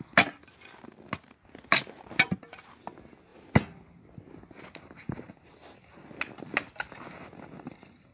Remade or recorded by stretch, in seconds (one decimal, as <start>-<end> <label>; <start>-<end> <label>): 0.0-8.1 recorded